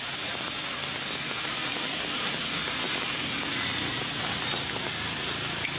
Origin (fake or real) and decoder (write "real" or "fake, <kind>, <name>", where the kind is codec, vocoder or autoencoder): real